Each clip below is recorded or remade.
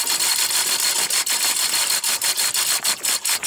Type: recorded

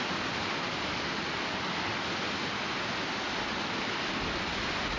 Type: recorded